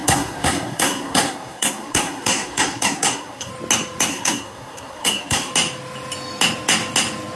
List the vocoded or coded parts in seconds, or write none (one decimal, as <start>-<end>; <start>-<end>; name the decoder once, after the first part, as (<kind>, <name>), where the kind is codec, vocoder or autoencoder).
0.0-3.5 (codec, SNAC); 4.1-5.5